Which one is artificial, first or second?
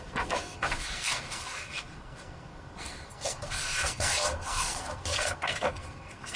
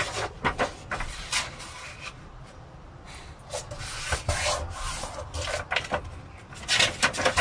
first